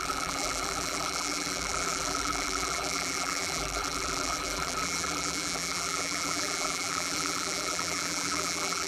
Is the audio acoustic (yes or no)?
no